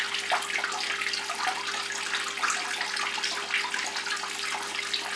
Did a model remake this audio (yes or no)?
no